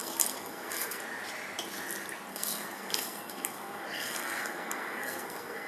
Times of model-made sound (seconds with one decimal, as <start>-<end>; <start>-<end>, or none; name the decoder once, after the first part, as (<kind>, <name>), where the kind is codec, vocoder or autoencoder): 0.0-1.0 (codec, SNAC); 2.3-5.7